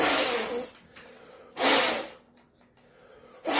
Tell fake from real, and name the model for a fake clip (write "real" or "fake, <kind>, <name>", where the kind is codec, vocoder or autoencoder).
real